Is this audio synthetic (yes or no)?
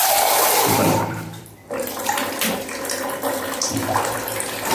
yes